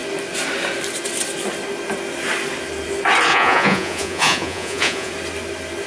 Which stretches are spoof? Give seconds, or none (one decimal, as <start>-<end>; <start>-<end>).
3.3-5.1